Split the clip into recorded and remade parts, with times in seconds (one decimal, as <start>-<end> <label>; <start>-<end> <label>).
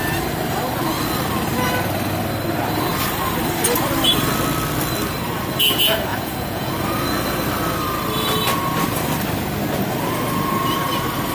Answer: 0.0-6.1 recorded; 6.1-6.7 remade; 6.7-11.3 recorded